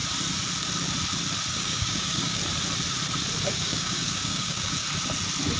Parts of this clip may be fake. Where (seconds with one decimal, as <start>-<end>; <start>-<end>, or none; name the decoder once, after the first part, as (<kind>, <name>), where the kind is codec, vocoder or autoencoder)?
1.5-2.4 (codec, DAC); 3.5-4.8